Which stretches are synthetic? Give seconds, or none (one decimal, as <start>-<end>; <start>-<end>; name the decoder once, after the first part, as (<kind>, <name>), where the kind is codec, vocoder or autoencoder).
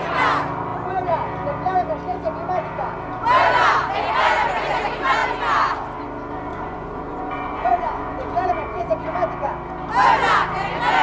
6.5-8.9 (vocoder, Vocos)